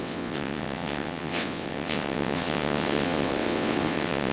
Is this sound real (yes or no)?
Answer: no